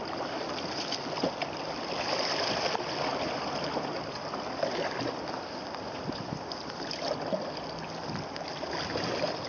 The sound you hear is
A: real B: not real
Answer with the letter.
A